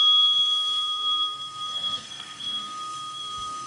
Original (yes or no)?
no